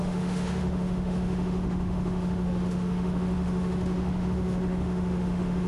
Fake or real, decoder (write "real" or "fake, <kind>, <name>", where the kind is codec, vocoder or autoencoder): fake, autoencoder, DAC-VAE